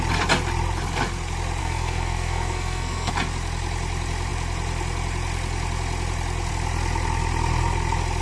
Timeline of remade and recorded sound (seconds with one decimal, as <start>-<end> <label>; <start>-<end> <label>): 0.0-1.6 recorded; 1.6-3.1 remade; 3.1-8.2 recorded